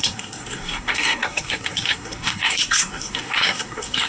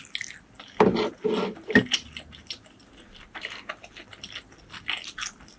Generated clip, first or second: first